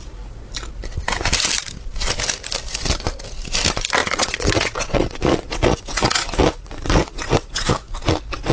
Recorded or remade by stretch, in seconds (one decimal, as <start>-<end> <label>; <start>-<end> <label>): 0.0-4.0 recorded; 4.0-7.7 remade; 7.7-8.5 recorded